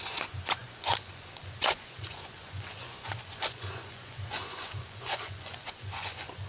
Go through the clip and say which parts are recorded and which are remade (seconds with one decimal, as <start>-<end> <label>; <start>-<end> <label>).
0.0-6.5 remade